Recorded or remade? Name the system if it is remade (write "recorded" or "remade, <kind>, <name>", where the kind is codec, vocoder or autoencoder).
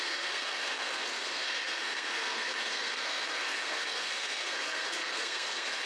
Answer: remade, codec, SNAC